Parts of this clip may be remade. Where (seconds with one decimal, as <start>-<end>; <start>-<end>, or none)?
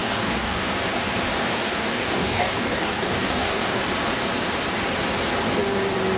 0.0-0.6; 1.4-3.8